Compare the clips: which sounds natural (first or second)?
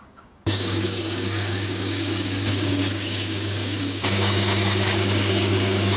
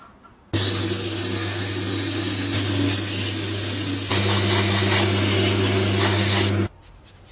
second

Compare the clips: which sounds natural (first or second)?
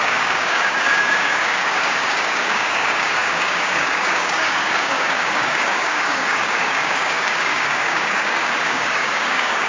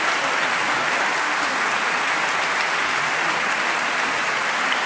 second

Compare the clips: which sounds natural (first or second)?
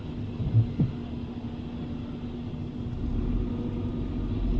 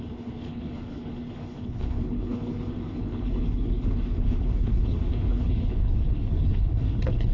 first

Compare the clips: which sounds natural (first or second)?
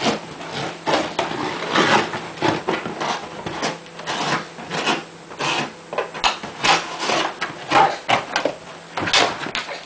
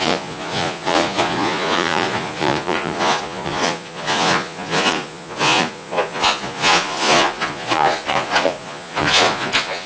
first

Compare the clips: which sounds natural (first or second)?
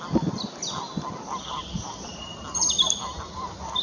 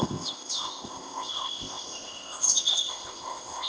first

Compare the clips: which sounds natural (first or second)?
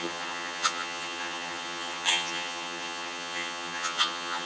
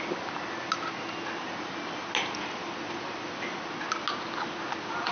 second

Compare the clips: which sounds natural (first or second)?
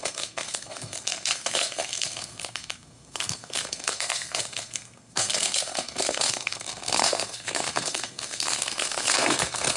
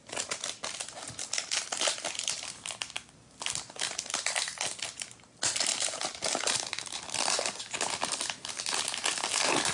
second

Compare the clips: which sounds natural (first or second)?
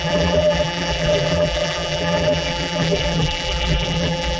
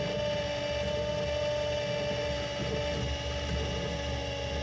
second